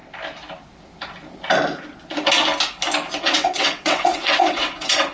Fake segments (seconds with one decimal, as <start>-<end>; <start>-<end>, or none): 3.1-5.1